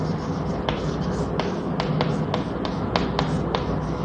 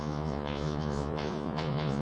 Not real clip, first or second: second